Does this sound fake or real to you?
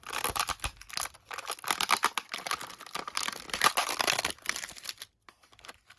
real